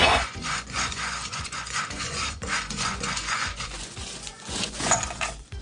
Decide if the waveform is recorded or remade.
remade